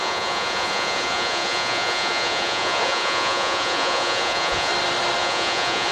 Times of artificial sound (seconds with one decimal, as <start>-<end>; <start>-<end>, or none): 0.0-4.7; 5.2-5.9